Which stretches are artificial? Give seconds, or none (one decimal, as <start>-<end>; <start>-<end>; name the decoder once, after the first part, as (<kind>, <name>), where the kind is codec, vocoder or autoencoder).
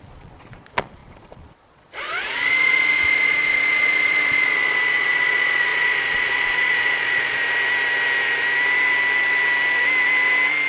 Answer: 0.0-7.4 (vocoder, Vocos)